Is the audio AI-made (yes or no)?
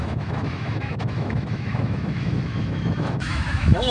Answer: yes